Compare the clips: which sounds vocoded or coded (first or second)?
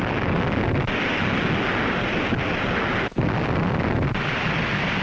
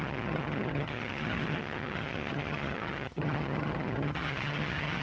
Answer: second